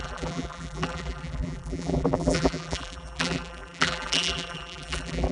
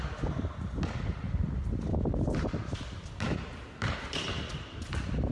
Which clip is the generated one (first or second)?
first